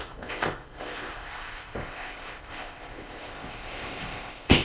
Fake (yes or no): yes